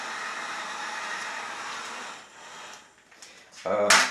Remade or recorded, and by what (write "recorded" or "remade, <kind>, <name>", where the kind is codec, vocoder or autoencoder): recorded